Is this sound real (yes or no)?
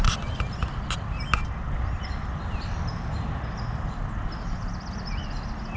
yes